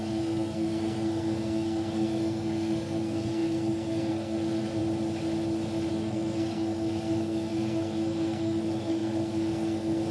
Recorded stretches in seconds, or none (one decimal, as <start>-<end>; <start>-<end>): 4.8-5.9